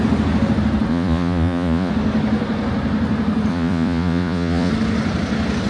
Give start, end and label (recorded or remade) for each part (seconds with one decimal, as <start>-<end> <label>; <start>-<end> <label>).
0.0-0.9 recorded; 0.9-1.9 remade; 1.9-3.5 recorded; 3.5-4.7 remade; 4.7-5.7 recorded